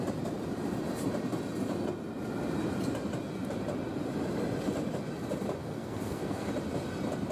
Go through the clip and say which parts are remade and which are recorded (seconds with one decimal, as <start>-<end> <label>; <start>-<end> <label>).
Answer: 0.0-5.6 recorded; 5.6-6.5 remade; 6.5-7.3 recorded